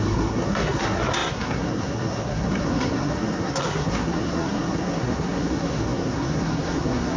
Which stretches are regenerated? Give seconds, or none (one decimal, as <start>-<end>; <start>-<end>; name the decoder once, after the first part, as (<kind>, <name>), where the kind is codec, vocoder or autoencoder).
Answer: 0.0-7.2 (codec, SNAC)